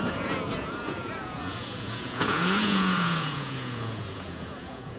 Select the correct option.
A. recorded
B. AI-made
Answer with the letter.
B